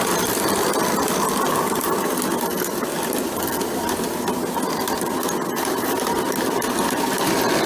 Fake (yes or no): no